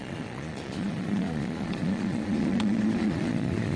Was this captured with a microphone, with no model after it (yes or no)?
no